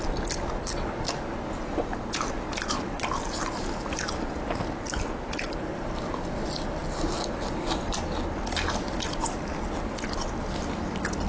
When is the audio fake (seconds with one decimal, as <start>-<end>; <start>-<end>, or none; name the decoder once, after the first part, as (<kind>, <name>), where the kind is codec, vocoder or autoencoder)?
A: none